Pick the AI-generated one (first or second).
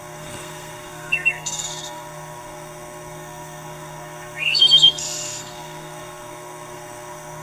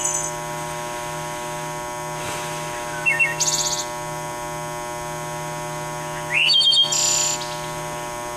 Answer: first